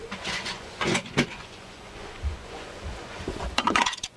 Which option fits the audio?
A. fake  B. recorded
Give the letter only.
A